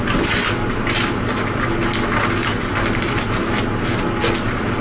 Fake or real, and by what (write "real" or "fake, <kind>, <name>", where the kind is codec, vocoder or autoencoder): real